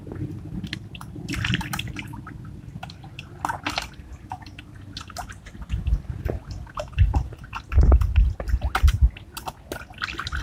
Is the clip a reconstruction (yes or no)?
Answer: no